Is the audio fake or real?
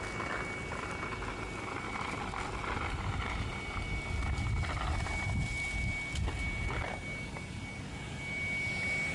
real